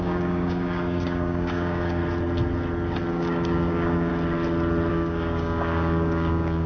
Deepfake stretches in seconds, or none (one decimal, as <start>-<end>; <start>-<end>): 0.0-2.0; 3.1-4.1; 4.9-6.7